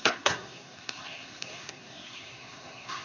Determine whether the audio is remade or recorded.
remade